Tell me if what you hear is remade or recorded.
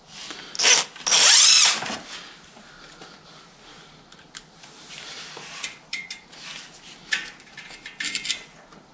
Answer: recorded